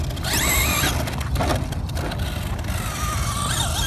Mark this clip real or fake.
real